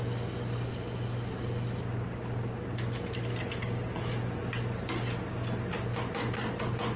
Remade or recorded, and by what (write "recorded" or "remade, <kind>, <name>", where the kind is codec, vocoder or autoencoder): recorded